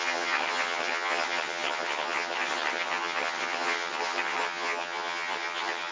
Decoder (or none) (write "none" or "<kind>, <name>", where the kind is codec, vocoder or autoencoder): vocoder, HiFi-GAN